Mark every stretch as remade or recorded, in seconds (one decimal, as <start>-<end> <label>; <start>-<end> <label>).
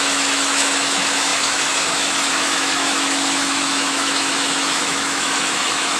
0.0-6.0 remade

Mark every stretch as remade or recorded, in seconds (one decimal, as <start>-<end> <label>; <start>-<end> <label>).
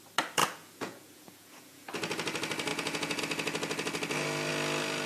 0.0-0.4 recorded; 0.4-1.9 remade; 1.9-2.7 recorded; 2.7-3.2 remade; 3.2-5.1 recorded